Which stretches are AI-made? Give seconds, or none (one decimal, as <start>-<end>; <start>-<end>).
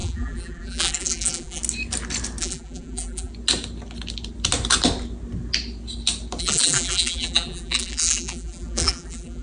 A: 0.0-1.6; 2.4-3.3; 6.4-9.4